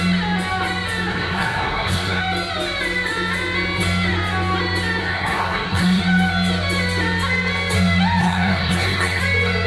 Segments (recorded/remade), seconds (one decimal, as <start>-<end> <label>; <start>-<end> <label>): 0.0-1.1 recorded; 1.1-2.2 remade; 2.2-5.0 recorded; 5.0-6.0 remade; 6.0-8.2 recorded; 8.2-9.2 remade; 9.2-9.7 recorded